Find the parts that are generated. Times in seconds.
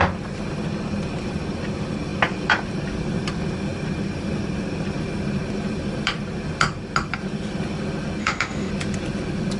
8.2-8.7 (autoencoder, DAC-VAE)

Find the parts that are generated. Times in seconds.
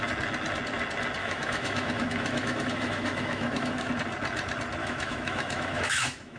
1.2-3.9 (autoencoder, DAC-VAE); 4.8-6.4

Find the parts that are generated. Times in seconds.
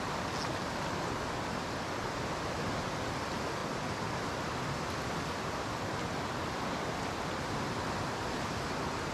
none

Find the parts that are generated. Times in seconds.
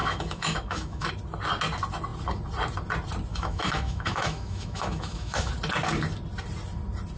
0.0-1.1 (autoencoder, DAC-VAE); 3.3-5.5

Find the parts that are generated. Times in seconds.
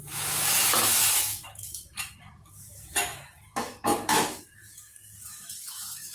0.0-6.1 (autoencoder, DAC-VAE)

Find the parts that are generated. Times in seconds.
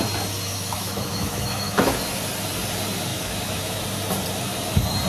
0.5-2.0 (autoencoder, DAC-VAE); 3.1-3.8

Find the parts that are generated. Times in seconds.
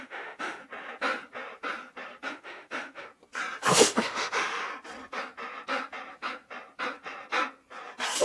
0.0-0.6 (autoencoder, DAC-VAE); 2.3-3.1; 3.7-4.7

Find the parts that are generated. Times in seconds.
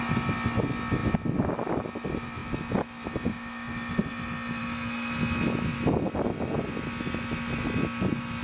none